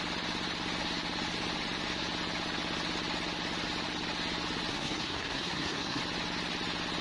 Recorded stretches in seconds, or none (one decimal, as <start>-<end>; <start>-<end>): 0.0-4.7; 6.0-7.0